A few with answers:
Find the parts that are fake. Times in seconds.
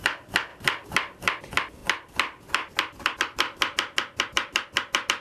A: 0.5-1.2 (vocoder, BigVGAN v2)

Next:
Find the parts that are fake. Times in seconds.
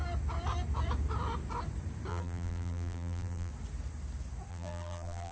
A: 2.1-3.5 (vocoder, BigVGAN v2); 4.5-5.3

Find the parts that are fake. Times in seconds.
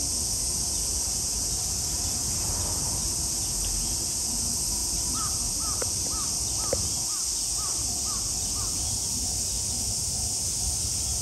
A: 4.8-6.3 (vocoder, BigVGAN v2)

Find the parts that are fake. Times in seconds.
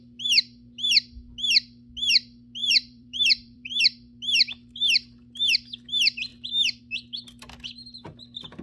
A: 2.6-3.8 (vocoder, BigVGAN v2)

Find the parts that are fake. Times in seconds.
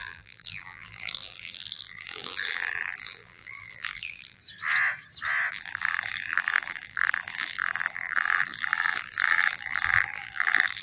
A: 0.0-4.4 (vocoder, BigVGAN v2); 5.5-10.8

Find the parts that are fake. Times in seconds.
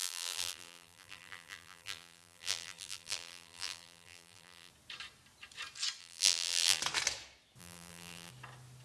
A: 0.0-4.7 (vocoder, BigVGAN v2); 6.0-6.8; 7.6-8.3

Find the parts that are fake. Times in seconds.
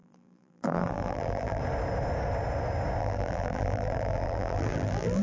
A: 0.0-1.6 (vocoder, BigVGAN v2); 3.0-5.2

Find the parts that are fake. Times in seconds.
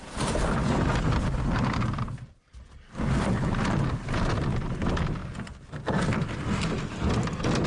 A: 0.0-0.9 (vocoder, BigVGAN v2); 3.9-5.2; 6.3-7.7